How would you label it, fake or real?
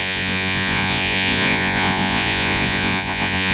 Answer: fake